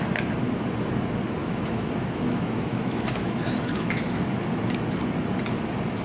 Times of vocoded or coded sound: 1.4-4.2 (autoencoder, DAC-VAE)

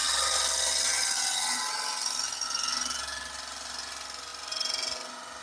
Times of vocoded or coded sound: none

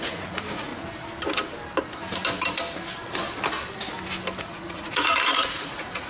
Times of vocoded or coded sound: 0.0-0.7 (vocoder, Vocos); 4.4-6.1